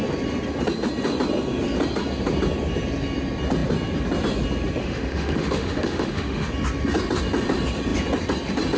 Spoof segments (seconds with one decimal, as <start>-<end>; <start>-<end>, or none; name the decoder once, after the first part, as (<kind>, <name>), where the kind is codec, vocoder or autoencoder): 4.8-6.5 (autoencoder, DAC-VAE)

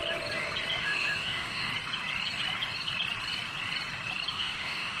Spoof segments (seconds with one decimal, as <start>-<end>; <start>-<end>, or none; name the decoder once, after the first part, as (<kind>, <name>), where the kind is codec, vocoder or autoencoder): 0.8-1.7 (autoencoder, DAC-VAE); 4.3-5.0

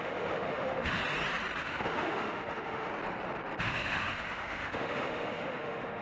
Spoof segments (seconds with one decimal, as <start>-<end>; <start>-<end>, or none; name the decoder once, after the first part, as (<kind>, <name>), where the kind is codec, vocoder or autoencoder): 0.0-1.0 (autoencoder, DAC-VAE); 1.6-2.9; 3.6-6.0

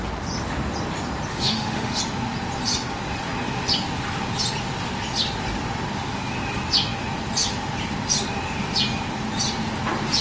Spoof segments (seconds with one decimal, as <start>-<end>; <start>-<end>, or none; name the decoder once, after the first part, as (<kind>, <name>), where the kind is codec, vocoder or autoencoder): 1.3-2.0 (autoencoder, DAC-VAE)

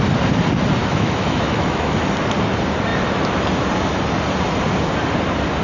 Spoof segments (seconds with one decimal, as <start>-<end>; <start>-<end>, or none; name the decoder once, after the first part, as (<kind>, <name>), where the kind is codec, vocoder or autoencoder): 0.8-2.0 (autoencoder, DAC-VAE)

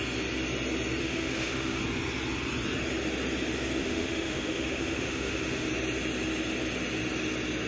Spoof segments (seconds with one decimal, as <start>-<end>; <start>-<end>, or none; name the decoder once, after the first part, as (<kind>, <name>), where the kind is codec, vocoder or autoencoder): 1.0-1.8 (autoencoder, DAC-VAE); 3.8-5.7

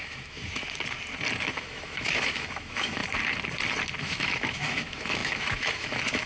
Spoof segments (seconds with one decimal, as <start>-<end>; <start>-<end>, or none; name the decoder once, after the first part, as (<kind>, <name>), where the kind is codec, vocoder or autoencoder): 0.0-0.4 (autoencoder, DAC-VAE); 1.6-3.0; 4.0-6.3